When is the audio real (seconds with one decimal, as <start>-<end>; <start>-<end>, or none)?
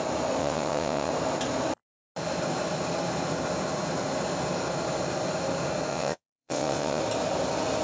0.0-0.4; 1.1-5.9; 7.0-7.8